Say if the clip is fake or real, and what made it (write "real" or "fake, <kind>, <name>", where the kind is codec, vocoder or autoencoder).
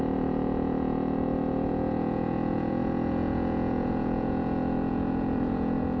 fake, vocoder, Vocos